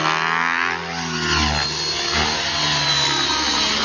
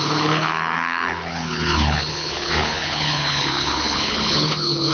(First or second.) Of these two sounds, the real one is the first